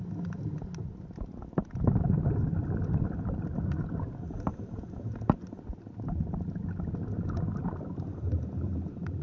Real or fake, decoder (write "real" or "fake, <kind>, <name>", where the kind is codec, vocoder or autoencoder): real